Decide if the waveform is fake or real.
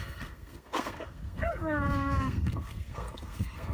fake